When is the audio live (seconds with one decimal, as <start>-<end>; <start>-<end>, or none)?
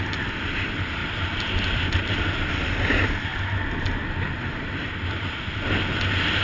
0.0-1.0; 2.5-6.4